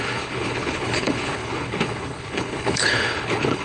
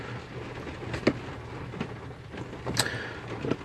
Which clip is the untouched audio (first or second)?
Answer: second